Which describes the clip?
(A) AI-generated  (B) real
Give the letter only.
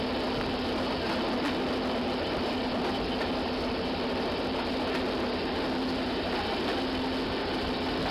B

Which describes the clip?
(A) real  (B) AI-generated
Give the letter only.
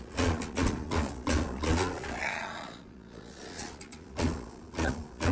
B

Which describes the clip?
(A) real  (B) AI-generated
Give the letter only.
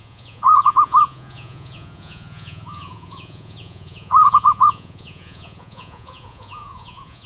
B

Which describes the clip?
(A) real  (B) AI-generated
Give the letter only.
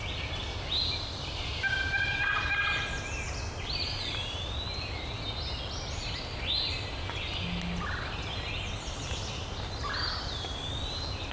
A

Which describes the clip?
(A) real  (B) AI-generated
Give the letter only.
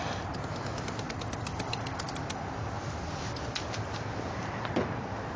A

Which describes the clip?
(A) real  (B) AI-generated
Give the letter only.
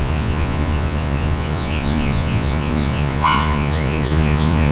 B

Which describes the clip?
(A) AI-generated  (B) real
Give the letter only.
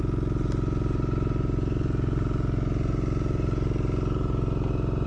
B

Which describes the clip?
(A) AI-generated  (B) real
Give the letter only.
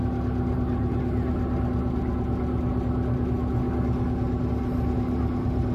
B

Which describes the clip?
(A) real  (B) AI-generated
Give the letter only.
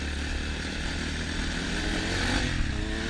A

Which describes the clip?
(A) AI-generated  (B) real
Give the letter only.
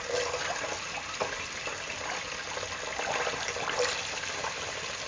A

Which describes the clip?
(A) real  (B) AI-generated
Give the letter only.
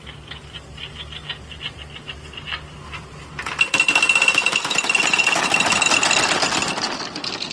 A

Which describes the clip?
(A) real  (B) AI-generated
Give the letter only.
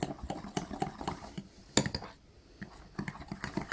A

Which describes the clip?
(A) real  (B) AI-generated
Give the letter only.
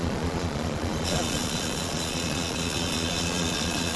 B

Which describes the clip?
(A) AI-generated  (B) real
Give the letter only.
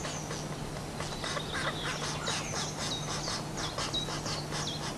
B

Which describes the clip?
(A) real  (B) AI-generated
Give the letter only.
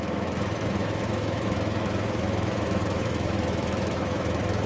B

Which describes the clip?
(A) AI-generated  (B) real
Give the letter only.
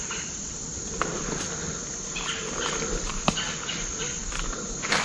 A